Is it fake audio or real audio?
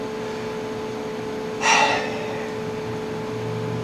real